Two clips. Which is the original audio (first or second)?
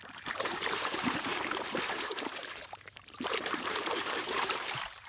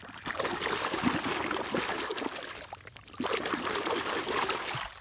second